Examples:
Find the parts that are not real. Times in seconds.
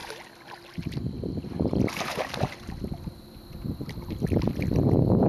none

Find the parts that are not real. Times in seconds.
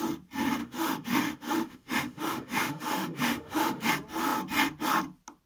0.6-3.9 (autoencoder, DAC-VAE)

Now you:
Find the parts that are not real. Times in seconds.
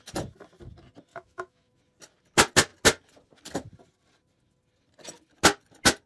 1.1-1.7 (autoencoder, DAC-VAE)